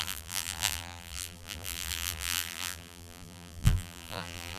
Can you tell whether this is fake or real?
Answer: fake